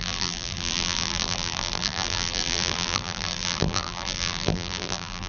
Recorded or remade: remade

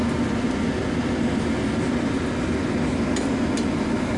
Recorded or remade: recorded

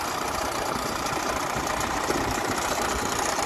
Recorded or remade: remade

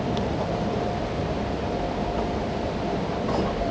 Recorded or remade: recorded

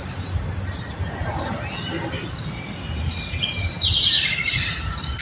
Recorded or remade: recorded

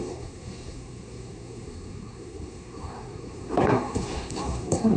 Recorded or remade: remade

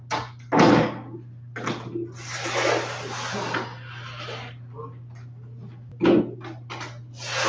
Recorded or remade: recorded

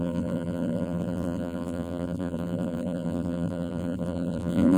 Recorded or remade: remade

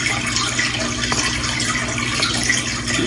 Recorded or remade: recorded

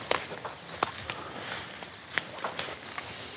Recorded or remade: recorded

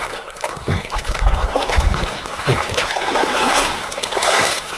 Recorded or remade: remade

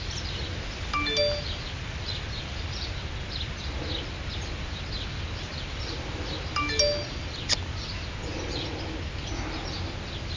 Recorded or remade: recorded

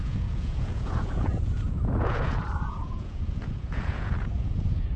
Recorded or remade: remade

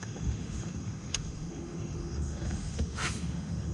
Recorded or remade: remade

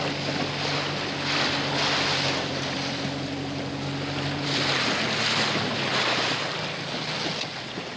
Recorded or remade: recorded